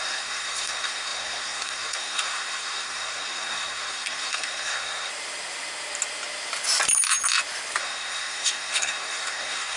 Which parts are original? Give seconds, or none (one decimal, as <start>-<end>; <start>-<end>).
5.1-7.8